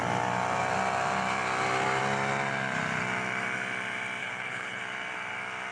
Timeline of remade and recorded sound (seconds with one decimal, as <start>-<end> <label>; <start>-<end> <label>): 0.0-4.2 recorded; 4.2-4.8 remade; 4.8-5.7 recorded